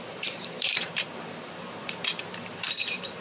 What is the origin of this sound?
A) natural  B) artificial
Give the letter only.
B